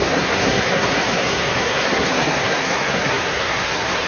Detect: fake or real fake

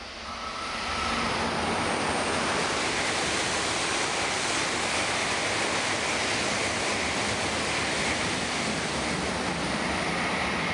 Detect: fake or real real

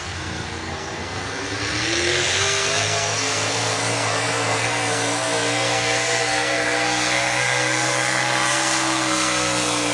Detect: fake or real fake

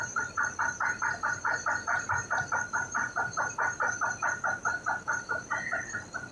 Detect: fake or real real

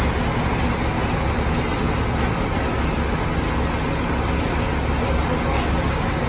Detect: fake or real real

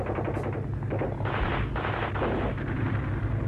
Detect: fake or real real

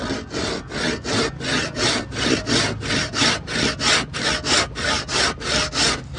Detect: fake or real real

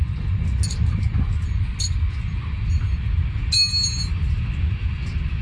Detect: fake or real real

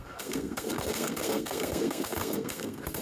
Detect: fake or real fake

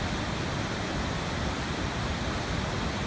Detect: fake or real real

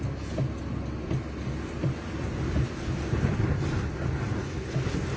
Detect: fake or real real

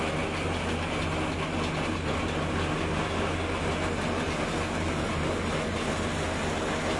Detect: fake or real real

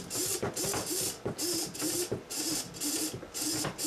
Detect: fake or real real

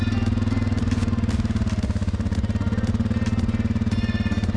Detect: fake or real real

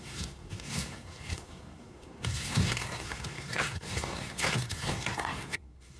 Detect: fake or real fake